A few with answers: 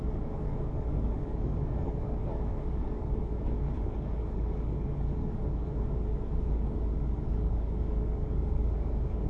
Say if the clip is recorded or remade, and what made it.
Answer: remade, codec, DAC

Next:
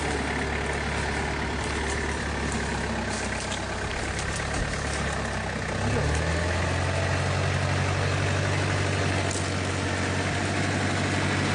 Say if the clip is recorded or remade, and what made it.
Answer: recorded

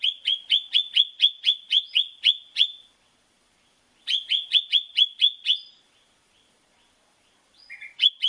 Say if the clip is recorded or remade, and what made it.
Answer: remade, vocoder, Vocos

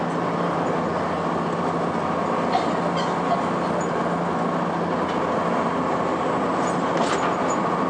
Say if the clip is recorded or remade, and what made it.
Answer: recorded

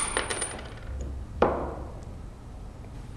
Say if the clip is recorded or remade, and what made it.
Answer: remade, vocoder, BigVGAN v2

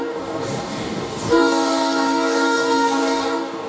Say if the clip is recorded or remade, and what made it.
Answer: remade, codec, DAC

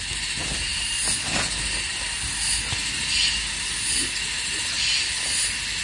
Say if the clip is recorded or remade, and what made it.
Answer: recorded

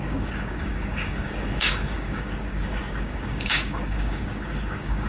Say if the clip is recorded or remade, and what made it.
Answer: remade, codec, DAC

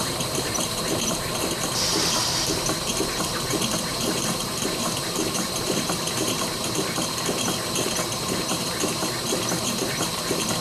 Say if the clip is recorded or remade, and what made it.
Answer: remade, vocoder, BigVGAN v2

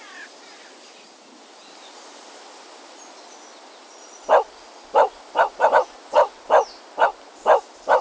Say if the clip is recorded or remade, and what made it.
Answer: remade, vocoder, BigVGAN v2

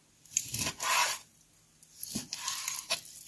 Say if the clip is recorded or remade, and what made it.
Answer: recorded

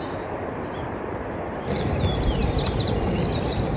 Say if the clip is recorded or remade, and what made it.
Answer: recorded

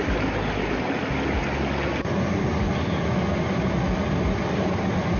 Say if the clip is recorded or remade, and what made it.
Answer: recorded